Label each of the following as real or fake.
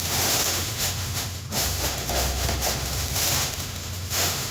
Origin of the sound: fake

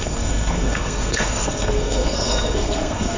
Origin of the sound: fake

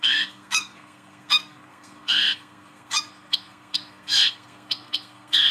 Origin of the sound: fake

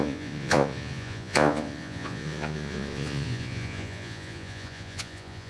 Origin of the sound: fake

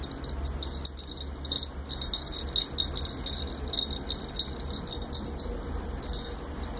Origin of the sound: real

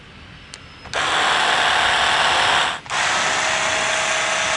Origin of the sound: real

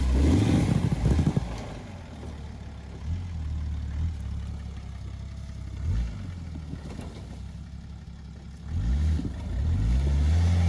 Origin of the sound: real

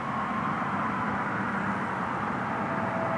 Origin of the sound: real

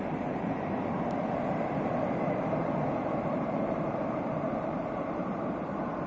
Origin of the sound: fake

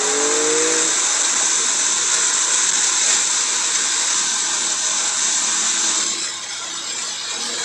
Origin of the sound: real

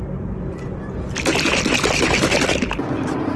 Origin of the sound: real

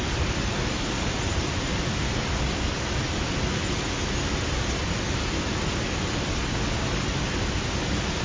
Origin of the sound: real